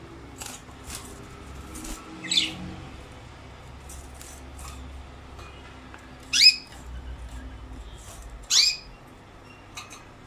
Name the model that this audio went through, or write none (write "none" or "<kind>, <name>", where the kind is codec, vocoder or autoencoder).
none